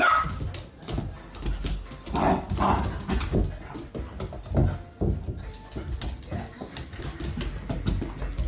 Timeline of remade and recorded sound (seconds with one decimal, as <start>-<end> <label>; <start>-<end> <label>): 0.0-8.5 recorded